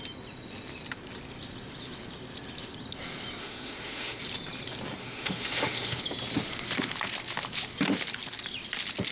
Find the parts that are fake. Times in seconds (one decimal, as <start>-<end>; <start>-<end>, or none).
3.4-4.2; 5.0-6.0